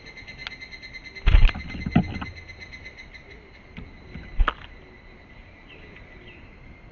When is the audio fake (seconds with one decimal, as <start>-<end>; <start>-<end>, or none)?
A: none